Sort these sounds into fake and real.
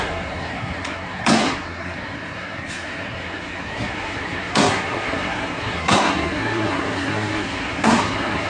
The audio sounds fake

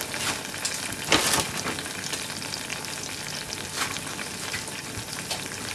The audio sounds real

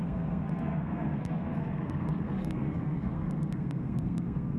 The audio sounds fake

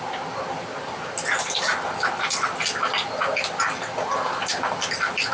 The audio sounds real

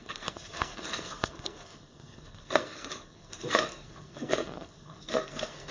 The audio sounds fake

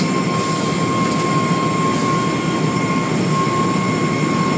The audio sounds real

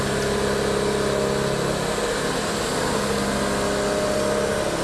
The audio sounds real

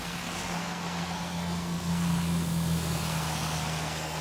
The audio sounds fake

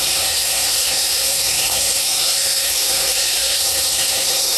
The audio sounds fake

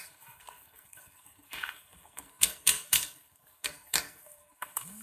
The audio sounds fake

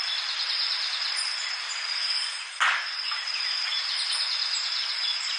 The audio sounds real